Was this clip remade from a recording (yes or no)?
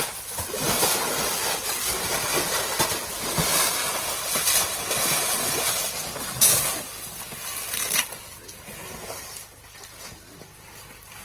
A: no